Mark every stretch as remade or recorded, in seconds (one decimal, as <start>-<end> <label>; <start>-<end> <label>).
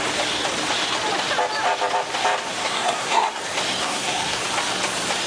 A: 0.0-2.6 recorded; 2.6-3.4 remade; 3.4-3.8 recorded; 3.8-4.4 remade; 4.4-5.3 recorded